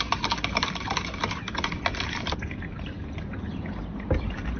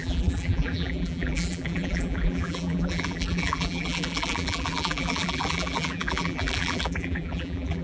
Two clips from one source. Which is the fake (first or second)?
second